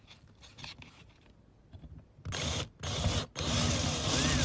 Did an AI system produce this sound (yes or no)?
no